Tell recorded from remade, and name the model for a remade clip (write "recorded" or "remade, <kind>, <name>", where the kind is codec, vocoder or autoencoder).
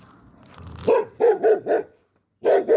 remade, vocoder, BigVGAN v2